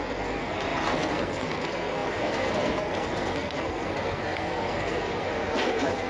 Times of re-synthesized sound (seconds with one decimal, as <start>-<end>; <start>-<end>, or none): 0.0-6.1